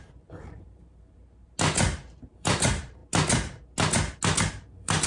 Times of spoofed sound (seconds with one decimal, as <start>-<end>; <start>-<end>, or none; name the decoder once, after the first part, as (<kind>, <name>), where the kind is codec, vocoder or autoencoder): 0.0-1.2 (vocoder, BigVGAN v2); 2.3-3.0; 4.5-5.1